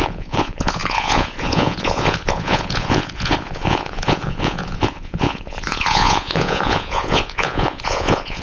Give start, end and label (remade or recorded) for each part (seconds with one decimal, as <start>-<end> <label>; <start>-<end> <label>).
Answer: 0.0-8.4 remade